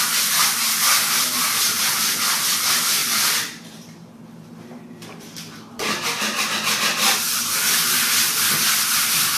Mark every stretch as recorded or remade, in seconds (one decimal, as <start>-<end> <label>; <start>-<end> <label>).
0.0-3.0 recorded; 3.0-7.9 remade; 7.9-9.4 recorded